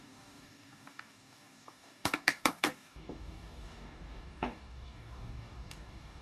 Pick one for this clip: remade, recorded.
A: remade